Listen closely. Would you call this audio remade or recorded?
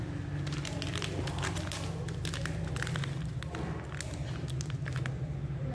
recorded